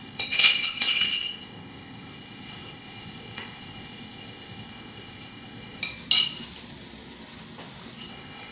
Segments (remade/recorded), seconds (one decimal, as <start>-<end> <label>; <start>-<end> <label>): 0.0-5.8 remade; 5.8-8.1 recorded; 8.1-8.5 remade